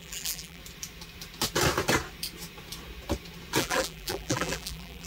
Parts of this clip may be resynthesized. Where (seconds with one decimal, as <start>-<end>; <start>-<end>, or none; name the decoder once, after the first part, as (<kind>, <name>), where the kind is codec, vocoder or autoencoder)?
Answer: 0.0-0.6 (vocoder, BigVGAN v2); 3.6-5.1